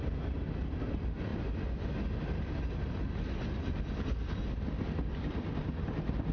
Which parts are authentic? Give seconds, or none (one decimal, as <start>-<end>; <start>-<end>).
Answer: 0.0-6.3